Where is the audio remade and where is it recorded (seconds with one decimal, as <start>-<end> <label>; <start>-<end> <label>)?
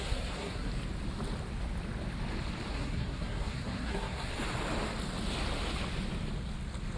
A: 0.0-0.7 remade; 0.7-2.7 recorded; 2.7-4.3 remade; 4.3-7.0 recorded